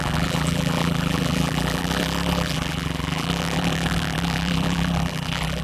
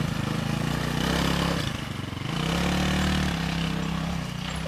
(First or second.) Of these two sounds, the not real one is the first